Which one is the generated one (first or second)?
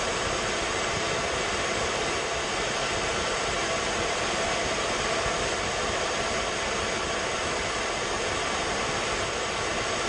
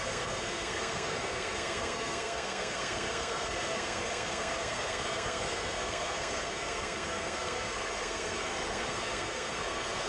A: second